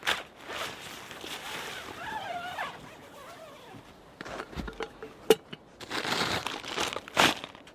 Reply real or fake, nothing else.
real